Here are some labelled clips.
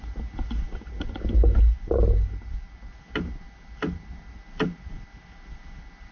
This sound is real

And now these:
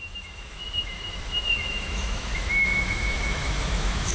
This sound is fake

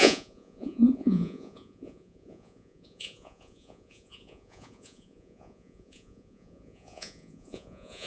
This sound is fake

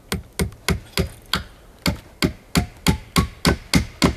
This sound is real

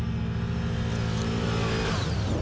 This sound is real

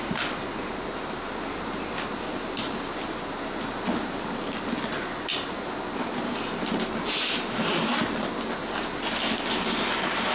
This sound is real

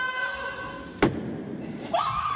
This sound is real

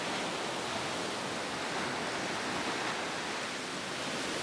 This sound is real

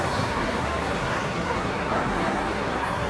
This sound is fake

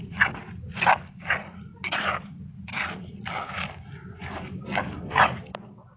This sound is real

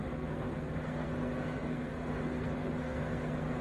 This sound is fake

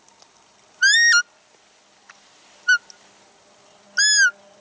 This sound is real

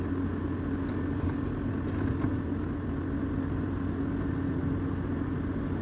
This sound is real